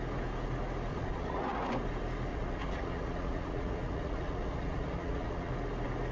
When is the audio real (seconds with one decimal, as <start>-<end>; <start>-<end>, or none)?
0.0-0.9; 1.7-2.3; 5.5-6.1